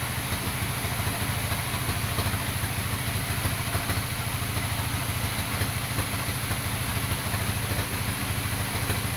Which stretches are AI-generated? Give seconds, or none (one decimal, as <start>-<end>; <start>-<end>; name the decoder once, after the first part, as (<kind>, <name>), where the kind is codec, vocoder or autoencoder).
none